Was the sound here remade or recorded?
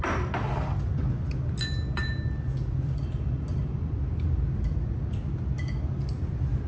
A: recorded